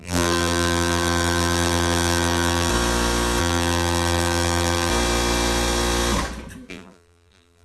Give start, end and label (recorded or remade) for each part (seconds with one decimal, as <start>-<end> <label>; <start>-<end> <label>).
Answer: 0.0-2.7 remade; 2.7-3.4 recorded; 3.4-4.9 remade; 4.9-6.7 recorded; 6.7-7.6 remade